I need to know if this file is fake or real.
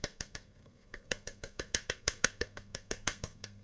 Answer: fake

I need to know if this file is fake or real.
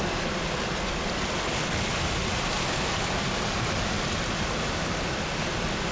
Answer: real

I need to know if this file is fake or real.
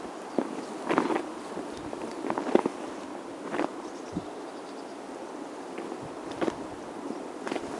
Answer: real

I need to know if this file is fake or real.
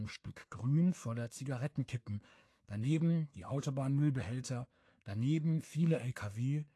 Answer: fake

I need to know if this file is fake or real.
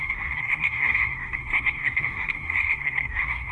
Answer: fake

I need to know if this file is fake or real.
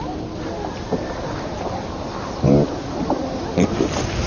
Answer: real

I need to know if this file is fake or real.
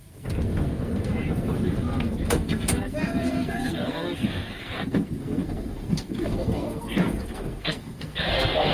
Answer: fake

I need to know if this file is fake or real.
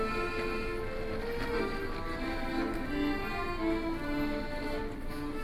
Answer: real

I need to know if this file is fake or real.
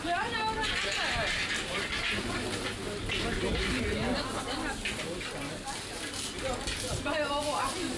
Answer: real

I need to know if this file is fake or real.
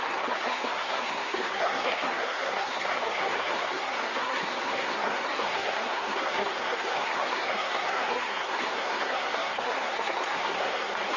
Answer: fake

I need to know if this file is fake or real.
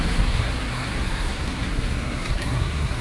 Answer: fake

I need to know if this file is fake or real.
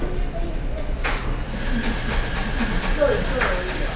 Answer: real